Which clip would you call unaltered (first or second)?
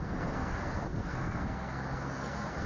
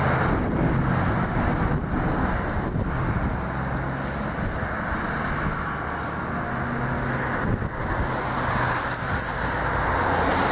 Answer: second